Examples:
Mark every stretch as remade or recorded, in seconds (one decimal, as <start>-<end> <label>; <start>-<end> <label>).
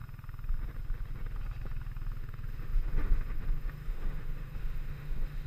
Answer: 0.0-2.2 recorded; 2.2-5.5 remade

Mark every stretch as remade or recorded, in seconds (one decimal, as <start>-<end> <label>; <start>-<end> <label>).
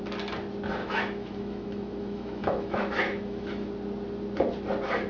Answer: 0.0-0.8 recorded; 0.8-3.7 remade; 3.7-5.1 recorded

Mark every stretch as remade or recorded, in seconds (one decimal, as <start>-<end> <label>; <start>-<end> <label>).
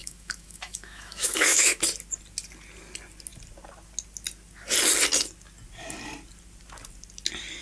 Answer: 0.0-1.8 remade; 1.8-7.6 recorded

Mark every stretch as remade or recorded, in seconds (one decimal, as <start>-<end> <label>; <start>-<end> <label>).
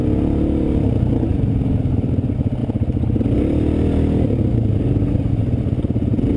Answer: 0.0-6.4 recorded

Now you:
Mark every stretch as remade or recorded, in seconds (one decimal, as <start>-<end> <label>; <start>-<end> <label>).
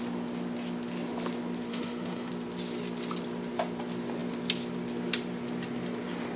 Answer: 0.0-1.7 recorded; 1.7-2.3 remade; 2.3-6.4 recorded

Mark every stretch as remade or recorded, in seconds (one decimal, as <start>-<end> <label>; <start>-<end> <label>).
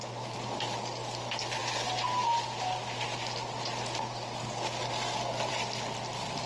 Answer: 0.0-6.5 recorded